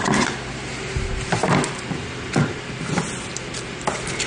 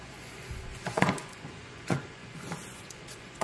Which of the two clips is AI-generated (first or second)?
second